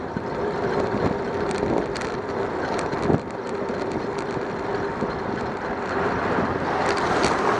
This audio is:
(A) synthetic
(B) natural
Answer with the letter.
A